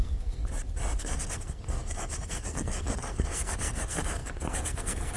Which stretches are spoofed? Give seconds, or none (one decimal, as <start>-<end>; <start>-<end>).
0.0-0.4; 1.0-5.2

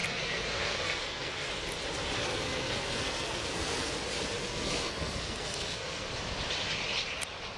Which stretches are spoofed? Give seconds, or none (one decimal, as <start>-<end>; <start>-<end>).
0.0-1.5; 2.2-3.9; 4.4-6.1

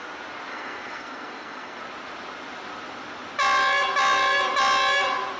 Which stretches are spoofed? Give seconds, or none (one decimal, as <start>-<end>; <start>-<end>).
0.5-1.8

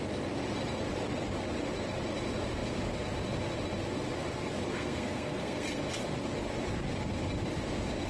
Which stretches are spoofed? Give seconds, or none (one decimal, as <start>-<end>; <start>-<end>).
4.7-5.8

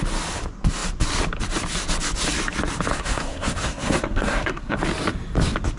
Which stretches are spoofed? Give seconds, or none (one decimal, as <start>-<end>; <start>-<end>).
2.9-4.8